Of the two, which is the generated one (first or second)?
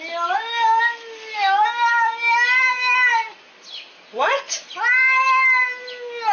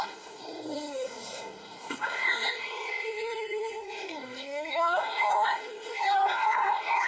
second